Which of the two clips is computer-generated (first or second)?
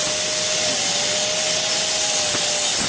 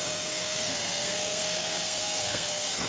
second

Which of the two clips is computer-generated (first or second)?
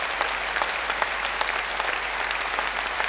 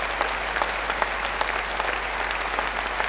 first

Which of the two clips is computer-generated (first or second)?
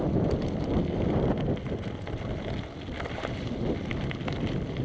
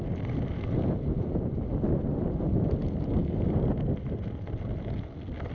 first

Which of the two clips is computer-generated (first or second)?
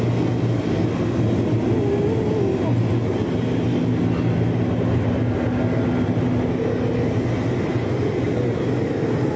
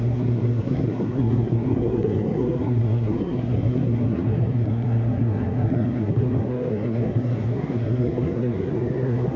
second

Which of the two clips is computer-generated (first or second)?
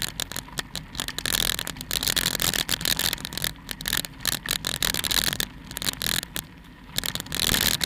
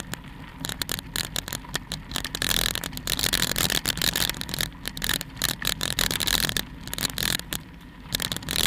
second